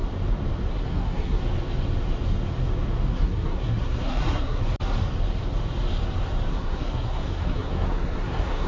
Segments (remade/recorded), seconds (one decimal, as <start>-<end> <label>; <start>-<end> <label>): 0.0-0.7 recorded; 0.7-1.4 remade; 1.4-3.1 recorded; 3.1-4.6 remade; 4.6-6.5 recorded; 6.5-8.7 remade